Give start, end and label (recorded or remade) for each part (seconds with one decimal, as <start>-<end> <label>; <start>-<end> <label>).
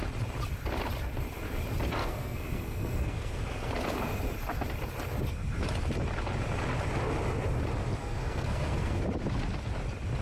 0.0-2.0 recorded; 2.0-3.7 remade; 3.7-8.0 recorded; 8.0-9.0 remade; 9.0-10.2 recorded